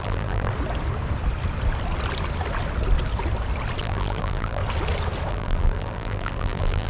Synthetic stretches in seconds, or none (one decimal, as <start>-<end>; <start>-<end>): 0.0-0.5; 3.8-4.6; 5.3-6.9